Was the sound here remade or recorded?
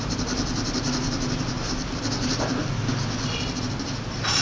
recorded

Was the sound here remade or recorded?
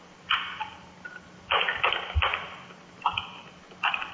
recorded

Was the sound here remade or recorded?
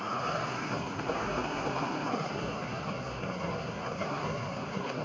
remade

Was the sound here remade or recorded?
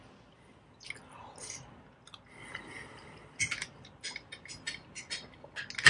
recorded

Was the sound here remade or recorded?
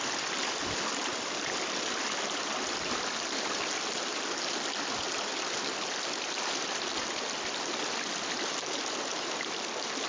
recorded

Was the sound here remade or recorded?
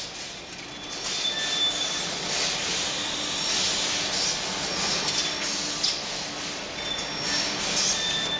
recorded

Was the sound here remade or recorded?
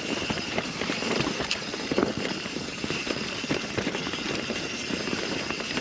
remade